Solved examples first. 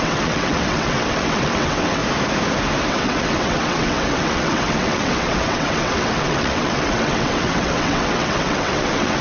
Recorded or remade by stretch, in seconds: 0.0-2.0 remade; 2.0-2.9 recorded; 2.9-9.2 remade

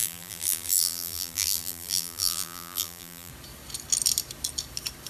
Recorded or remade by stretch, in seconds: 0.0-3.3 remade; 3.3-5.1 recorded

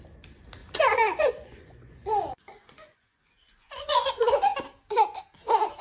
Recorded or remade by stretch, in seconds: 0.0-0.6 recorded; 0.6-4.1 remade; 4.1-5.8 recorded

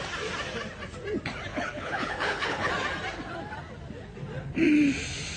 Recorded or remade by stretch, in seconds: 0.0-1.5 recorded; 1.5-2.7 remade; 2.7-5.4 recorded

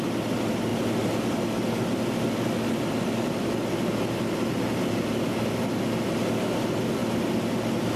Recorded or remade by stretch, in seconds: 0.0-8.0 recorded

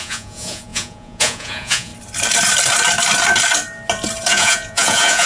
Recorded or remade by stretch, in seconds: 0.0-1.9 remade; 1.9-4.3 recorded; 4.3-5.3 remade

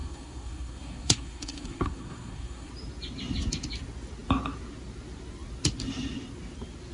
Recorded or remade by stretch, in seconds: 0.0-2.7 remade; 2.7-6.9 recorded